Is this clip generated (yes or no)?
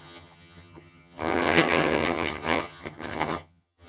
yes